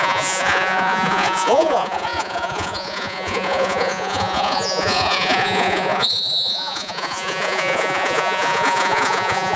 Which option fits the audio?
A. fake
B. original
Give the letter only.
A